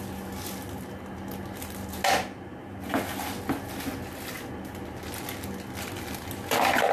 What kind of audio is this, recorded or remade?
recorded